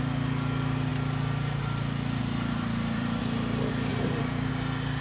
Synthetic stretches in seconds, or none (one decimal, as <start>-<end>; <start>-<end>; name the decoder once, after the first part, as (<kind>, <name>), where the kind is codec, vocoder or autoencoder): 2.2-3.2 (vocoder, BigVGAN v2); 3.9-4.5